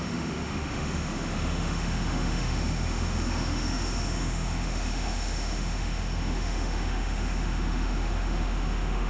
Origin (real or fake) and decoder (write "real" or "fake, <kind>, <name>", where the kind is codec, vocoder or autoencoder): fake, autoencoder, DAC-VAE